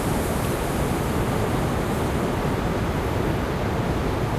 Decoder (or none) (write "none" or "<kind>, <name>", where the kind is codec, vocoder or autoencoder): none